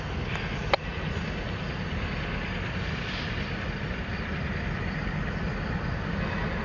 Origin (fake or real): real